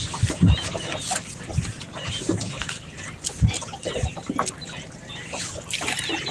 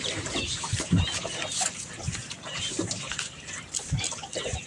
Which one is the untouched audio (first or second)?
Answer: first